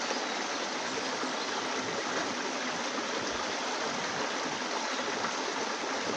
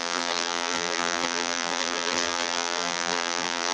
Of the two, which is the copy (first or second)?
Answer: second